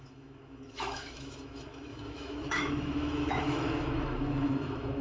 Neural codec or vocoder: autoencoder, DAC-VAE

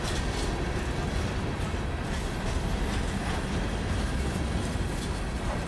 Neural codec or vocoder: none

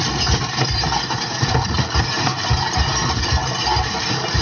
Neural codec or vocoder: none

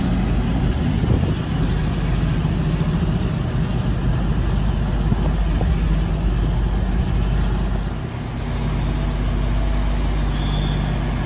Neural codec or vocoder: none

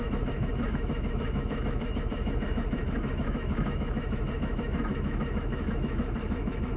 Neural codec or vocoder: autoencoder, DAC-VAE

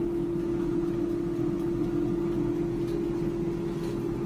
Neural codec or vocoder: none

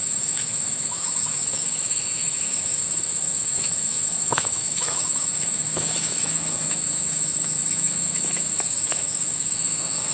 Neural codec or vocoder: autoencoder, DAC-VAE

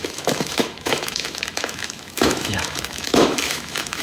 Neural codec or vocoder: autoencoder, DAC-VAE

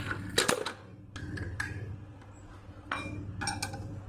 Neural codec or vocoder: none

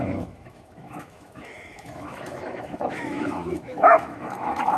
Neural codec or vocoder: autoencoder, DAC-VAE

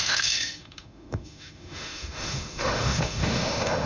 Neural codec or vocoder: autoencoder, DAC-VAE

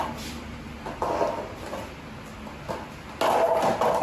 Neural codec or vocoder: none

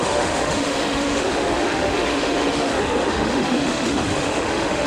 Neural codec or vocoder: autoencoder, DAC-VAE